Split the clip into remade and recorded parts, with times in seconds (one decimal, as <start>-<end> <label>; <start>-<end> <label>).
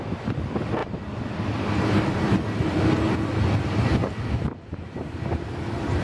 0.0-0.8 recorded; 0.8-2.8 remade; 2.8-3.9 recorded; 3.9-6.0 remade